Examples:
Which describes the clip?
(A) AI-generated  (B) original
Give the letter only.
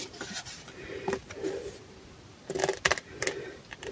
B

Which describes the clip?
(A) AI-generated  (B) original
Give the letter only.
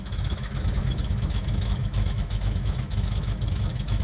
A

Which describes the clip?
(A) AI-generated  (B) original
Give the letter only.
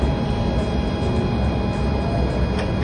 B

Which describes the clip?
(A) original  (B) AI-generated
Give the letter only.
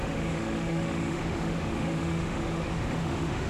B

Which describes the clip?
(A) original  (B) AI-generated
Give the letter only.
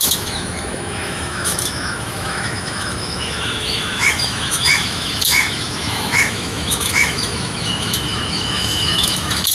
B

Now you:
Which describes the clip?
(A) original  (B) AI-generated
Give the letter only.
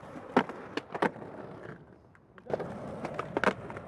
A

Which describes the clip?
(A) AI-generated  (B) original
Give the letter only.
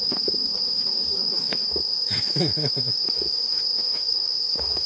A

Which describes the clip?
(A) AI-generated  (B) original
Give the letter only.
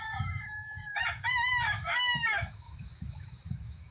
A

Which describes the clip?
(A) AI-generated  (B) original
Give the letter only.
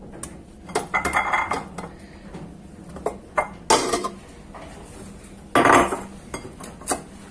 B